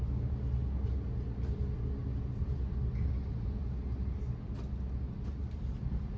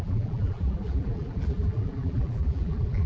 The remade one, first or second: second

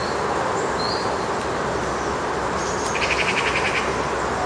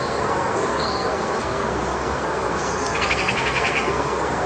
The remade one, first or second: second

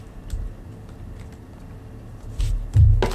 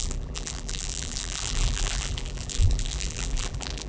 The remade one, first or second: second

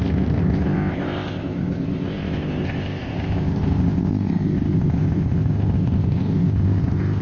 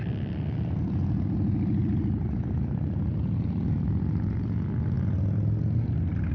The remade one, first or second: first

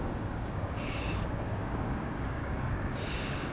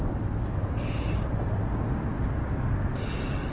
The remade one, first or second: first